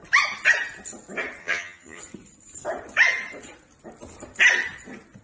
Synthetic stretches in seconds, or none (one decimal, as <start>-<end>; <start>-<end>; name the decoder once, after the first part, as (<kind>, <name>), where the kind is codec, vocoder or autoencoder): 1.4-2.0 (vocoder, HiFi-GAN)